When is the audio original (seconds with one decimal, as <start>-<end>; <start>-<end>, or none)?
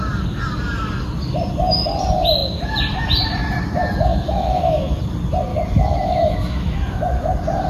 0.0-4.1; 5.0-5.5; 7.3-7.7